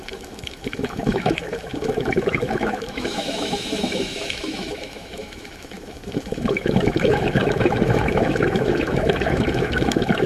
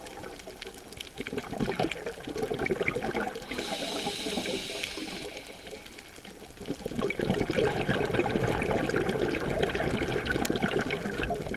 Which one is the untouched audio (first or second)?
second